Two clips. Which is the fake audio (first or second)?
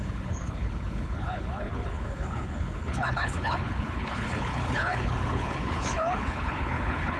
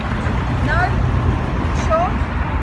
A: first